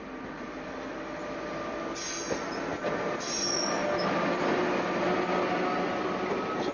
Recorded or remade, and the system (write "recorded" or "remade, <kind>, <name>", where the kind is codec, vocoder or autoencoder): recorded